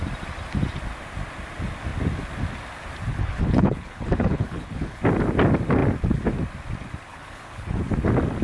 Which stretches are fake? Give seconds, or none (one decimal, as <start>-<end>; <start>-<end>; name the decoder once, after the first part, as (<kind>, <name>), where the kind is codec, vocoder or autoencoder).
3.1-5.0 (codec, HILCodec); 7.1-7.8